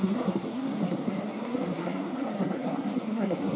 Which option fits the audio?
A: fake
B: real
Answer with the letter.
A